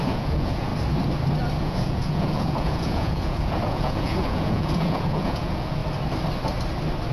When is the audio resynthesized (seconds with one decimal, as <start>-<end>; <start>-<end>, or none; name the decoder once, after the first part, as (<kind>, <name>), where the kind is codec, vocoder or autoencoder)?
0.0-0.7 (vocoder, Vocos); 1.6-5.8